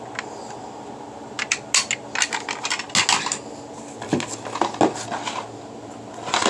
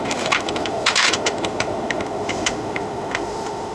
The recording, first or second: first